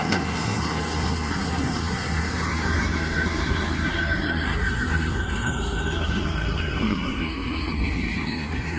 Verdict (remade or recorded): remade